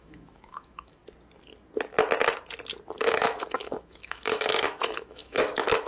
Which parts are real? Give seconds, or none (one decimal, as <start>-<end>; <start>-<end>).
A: 1.0-3.0